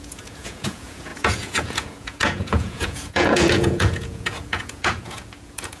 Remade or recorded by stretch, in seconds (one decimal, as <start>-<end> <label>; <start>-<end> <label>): 0.0-5.8 remade